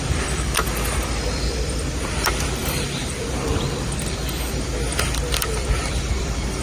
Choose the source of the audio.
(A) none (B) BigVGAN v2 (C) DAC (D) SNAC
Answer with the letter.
B